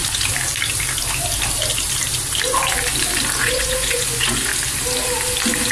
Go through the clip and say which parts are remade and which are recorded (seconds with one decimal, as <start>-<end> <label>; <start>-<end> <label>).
0.0-3.4 recorded; 3.4-4.5 remade; 4.5-5.7 recorded